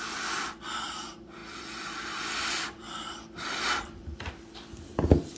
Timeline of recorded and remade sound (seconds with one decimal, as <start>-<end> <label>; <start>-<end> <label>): 0.0-5.4 remade

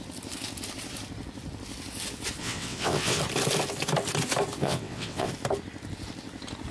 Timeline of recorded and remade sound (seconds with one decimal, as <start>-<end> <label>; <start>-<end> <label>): 0.0-2.4 recorded; 2.4-3.2 remade; 3.2-4.6 recorded; 4.6-5.3 remade; 5.3-6.7 recorded

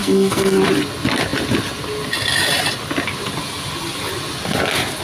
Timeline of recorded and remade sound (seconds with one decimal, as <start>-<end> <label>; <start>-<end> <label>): 0.0-0.6 remade; 0.6-5.0 recorded

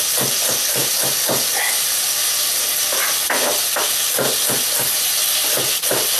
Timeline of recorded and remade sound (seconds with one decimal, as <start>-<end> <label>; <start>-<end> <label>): 0.0-6.2 recorded